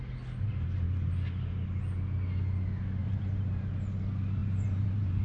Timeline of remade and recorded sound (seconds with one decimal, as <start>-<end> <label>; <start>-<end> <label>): 0.0-3.0 recorded; 3.0-3.7 remade; 3.7-4.4 recorded; 4.4-5.2 remade